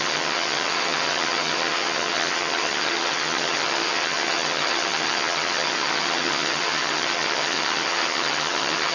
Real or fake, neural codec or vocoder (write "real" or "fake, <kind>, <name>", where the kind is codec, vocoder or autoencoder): fake, vocoder, HiFi-GAN